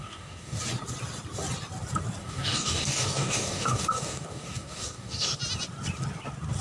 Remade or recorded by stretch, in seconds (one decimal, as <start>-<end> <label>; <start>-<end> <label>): 0.0-0.6 remade; 0.6-2.2 recorded; 2.2-5.4 remade; 5.4-6.6 recorded